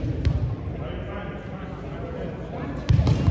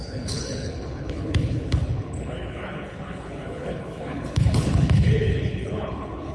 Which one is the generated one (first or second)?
second